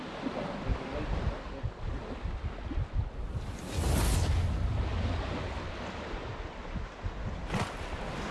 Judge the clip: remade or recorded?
recorded